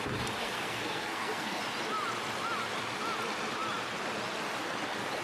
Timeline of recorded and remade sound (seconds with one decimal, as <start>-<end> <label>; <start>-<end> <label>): 0.0-0.4 recorded; 0.4-1.6 remade; 1.6-5.2 recorded